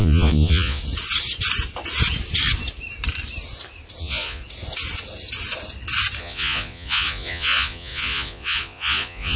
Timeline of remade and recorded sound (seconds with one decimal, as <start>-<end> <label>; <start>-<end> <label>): 0.0-0.8 remade; 0.8-4.0 recorded; 4.0-4.4 remade; 4.4-6.2 recorded; 6.2-9.4 remade